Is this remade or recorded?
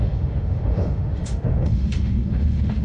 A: remade